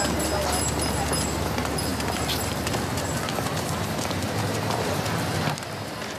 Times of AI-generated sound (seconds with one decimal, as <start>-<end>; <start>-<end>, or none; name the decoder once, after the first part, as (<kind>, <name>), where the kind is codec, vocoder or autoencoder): none